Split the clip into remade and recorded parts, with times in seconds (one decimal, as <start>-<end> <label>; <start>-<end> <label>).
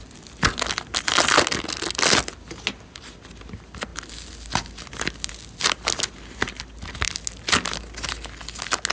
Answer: 0.0-8.9 recorded